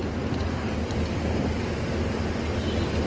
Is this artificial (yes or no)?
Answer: no